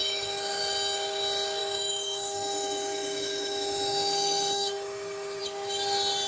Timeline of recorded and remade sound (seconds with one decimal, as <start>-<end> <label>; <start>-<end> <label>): 0.0-0.6 remade; 0.6-1.6 recorded; 1.6-5.4 remade; 5.4-6.3 recorded